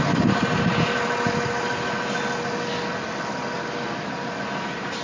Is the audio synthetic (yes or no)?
no